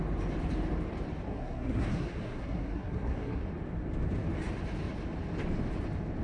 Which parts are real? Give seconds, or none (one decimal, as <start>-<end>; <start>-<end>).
0.0-1.3; 3.4-6.2

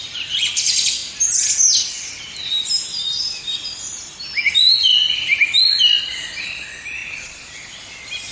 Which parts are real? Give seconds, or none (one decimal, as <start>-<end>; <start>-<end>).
1.0-4.5